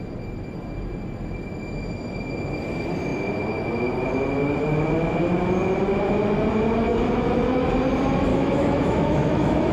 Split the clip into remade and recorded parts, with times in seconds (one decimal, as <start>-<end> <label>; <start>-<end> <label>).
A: 0.0-6.9 recorded; 6.9-7.7 remade; 7.7-8.3 recorded; 8.3-9.7 remade